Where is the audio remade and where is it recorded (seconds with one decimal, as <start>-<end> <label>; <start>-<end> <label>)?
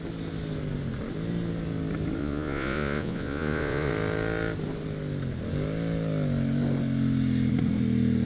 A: 0.0-2.2 recorded; 2.2-3.9 remade; 3.9-8.2 recorded